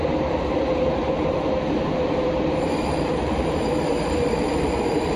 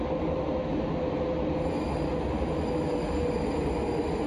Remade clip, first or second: first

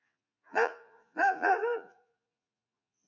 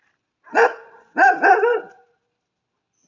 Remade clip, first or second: first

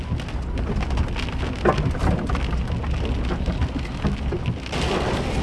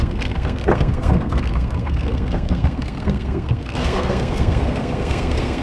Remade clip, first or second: second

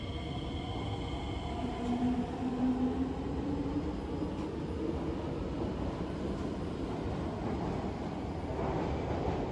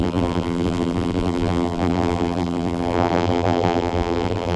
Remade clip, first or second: second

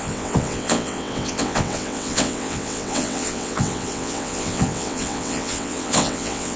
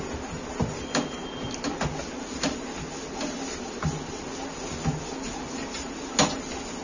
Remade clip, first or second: first